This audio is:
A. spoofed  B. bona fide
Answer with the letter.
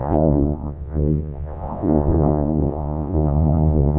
A